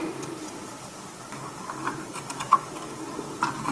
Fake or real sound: real